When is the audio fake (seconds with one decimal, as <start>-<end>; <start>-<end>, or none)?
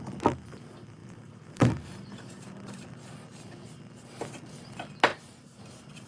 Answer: 1.0-3.1; 5.1-5.6